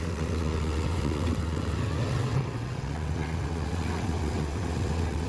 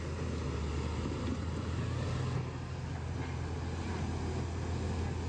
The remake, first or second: first